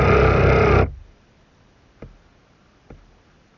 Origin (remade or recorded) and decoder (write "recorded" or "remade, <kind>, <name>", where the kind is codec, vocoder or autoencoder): recorded